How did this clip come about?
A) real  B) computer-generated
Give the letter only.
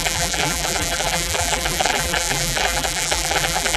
B